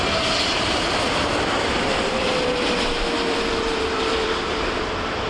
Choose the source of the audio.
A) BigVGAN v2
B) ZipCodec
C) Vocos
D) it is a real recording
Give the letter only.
A